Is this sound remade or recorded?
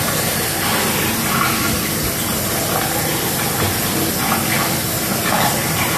recorded